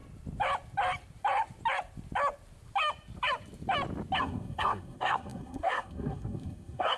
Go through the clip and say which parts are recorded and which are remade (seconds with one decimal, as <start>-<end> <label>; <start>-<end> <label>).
0.0-4.2 recorded; 4.2-7.0 remade